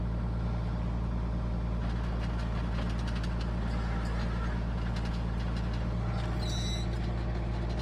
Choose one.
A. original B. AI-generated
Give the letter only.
A